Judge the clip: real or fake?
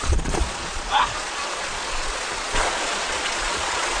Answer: fake